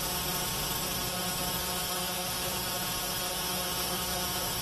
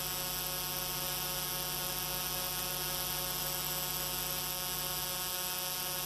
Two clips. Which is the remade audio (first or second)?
first